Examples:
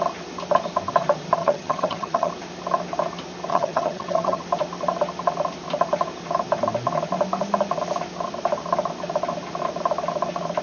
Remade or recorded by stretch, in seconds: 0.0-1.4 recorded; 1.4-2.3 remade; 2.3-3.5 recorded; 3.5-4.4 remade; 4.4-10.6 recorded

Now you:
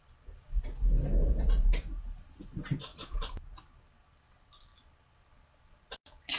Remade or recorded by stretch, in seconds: 0.0-6.4 recorded

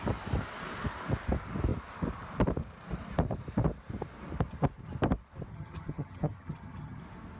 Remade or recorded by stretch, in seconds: 0.0-5.5 recorded; 5.5-7.0 remade; 7.0-7.4 recorded

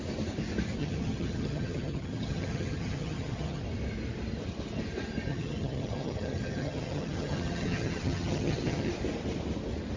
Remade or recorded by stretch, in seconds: 0.0-0.8 recorded; 0.8-3.6 remade; 3.6-5.3 recorded; 5.3-8.9 remade; 8.9-10.0 recorded

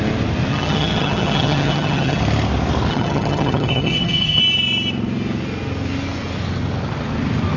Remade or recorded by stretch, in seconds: 0.0-0.5 recorded; 0.5-2.2 remade; 2.2-2.9 recorded; 2.9-4.4 remade; 4.4-7.6 recorded